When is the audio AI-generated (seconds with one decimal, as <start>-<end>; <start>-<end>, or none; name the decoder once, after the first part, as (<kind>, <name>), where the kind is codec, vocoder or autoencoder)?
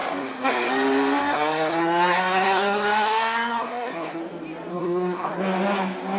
0.0-0.7 (codec, SNAC); 1.2-4.2; 4.7-5.3